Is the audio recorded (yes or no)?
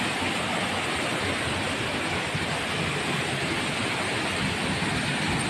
yes